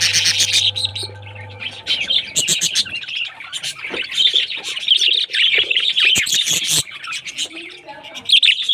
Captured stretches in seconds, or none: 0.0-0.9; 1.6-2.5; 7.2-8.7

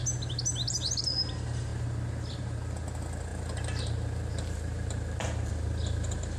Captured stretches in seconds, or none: 0.0-0.7; 1.7-2.4; 3.3-5.5

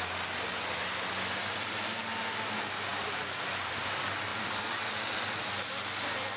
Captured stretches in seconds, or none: 0.0-2.9; 3.9-4.3; 5.4-6.4

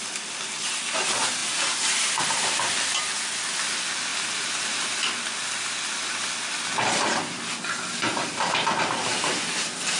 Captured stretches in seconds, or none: 0.0-1.4; 3.0-4.1; 4.9-8.1; 9.3-10.0

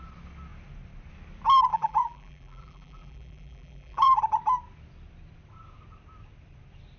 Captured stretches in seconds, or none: 0.0-1.7; 4.2-7.0